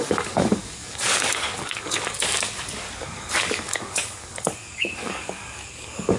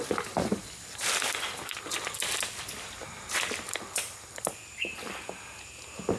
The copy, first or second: first